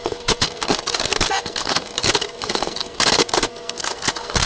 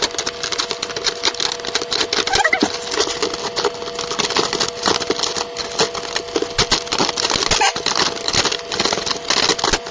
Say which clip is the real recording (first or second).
second